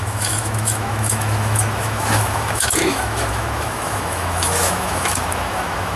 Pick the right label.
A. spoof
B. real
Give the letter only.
A